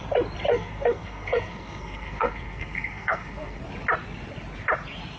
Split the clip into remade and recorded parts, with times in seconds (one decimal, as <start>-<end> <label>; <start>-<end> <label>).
0.0-0.5 recorded; 0.5-3.6 remade; 3.6-5.2 recorded